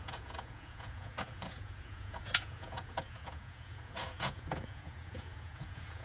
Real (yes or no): no